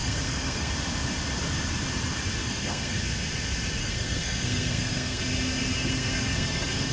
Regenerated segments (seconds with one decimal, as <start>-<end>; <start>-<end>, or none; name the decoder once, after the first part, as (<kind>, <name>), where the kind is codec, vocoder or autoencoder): 0.0-0.7 (codec, SNAC); 2.4-3.0; 3.8-5.2; 5.8-6.9